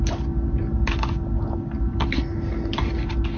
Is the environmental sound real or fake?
real